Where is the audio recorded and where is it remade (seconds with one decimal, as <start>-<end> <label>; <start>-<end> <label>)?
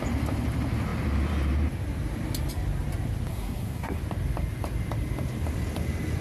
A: 0.0-3.3 recorded; 3.3-4.0 remade; 4.0-6.2 recorded